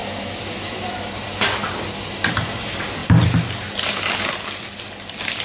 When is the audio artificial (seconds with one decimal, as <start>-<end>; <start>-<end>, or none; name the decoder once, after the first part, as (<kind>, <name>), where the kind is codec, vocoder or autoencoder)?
0.0-1.1 (autoencoder, DAC-VAE)